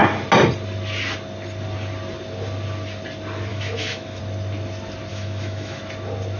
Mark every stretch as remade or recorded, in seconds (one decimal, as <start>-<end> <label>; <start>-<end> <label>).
0.0-3.5 recorded; 3.5-4.2 remade; 4.2-5.1 recorded; 5.1-5.8 remade; 5.8-6.4 recorded